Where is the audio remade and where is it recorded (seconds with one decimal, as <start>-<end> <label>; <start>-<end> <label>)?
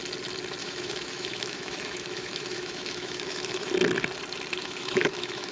0.0-0.6 recorded; 0.6-3.7 remade; 3.7-4.6 recorded; 4.6-5.5 remade